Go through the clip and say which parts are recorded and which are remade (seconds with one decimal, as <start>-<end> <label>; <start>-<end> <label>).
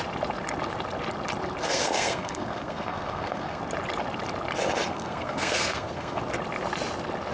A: 0.0-1.6 recorded; 1.6-3.6 remade; 3.6-4.9 recorded; 4.9-6.2 remade; 6.2-7.3 recorded